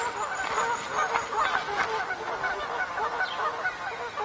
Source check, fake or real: real